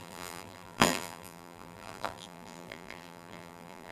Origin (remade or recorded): remade